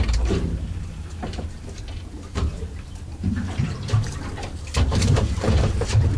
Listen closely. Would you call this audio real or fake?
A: fake